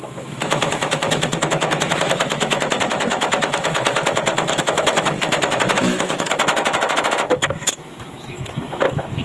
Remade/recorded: remade